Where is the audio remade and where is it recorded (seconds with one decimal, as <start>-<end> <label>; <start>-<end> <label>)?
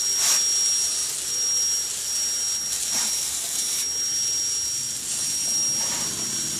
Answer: 0.0-6.6 recorded